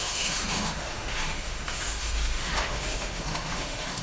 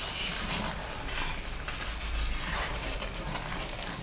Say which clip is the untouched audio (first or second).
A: second